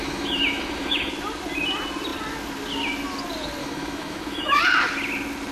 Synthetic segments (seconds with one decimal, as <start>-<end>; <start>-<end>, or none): 0.0-1.1; 3.6-4.6